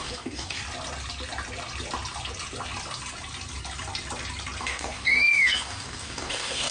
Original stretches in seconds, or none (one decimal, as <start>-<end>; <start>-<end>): 0.6-4.6